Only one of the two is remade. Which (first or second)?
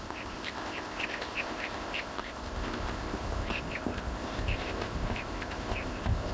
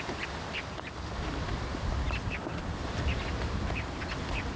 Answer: first